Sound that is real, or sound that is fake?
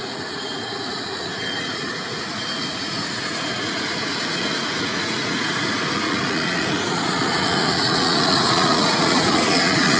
fake